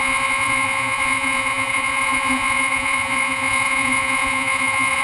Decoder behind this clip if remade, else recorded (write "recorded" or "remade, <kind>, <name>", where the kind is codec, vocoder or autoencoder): remade, vocoder, Vocos